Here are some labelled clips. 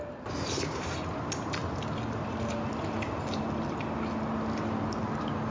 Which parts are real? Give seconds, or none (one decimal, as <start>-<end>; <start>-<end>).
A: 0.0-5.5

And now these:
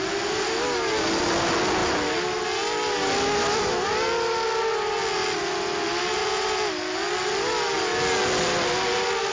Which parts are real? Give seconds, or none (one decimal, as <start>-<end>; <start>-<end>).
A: 0.0-9.3

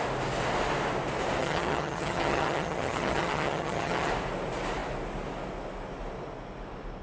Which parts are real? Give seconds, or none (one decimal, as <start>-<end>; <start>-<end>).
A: 0.0-1.4; 4.1-7.0

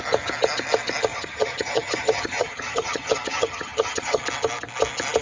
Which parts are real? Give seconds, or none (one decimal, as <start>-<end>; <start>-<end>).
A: 0.0-1.1; 4.2-5.2